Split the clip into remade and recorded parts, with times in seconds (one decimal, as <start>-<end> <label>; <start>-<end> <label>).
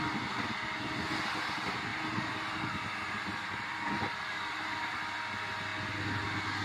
0.0-6.6 recorded